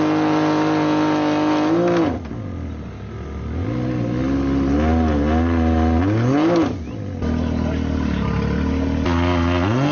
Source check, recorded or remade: recorded